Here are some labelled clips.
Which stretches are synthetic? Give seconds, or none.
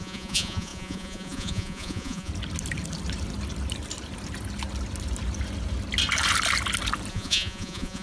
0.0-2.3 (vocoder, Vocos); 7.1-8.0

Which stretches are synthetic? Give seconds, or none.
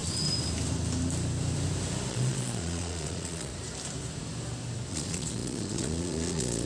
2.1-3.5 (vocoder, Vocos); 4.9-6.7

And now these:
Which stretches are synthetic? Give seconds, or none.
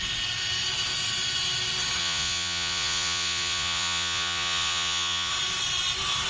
2.0-5.3 (vocoder, Vocos)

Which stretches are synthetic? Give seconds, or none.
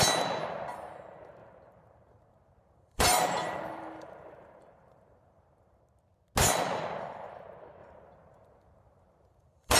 1.4-5.8 (vocoder, BigVGAN v2); 7.8-9.8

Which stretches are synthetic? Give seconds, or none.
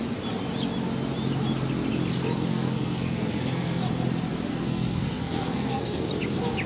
2.5-3.8 (codec, SNAC); 4.5-6.1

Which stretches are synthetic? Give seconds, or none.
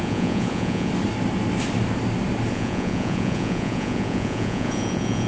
0.0-0.9 (vocoder, Vocos); 2.5-5.3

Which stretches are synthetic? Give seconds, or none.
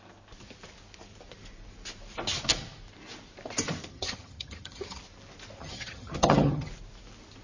3.9-5.0 (vocoder, HiFi-GAN); 5.6-6.7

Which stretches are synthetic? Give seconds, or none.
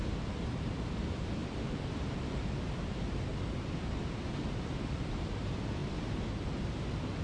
0.0-3.3 (vocoder, BigVGAN v2); 4.4-5.8